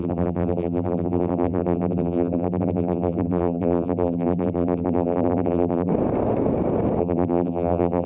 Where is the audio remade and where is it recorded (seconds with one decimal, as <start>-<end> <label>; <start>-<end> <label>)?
0.0-5.9 remade; 5.9-7.0 recorded; 7.0-8.1 remade